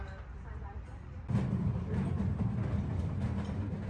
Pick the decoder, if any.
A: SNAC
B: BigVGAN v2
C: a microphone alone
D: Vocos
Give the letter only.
C